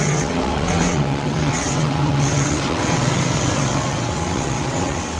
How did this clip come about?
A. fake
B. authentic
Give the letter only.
A